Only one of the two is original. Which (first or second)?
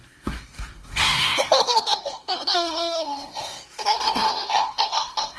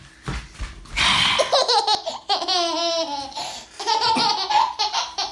second